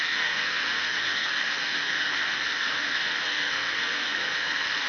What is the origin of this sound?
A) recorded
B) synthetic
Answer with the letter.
B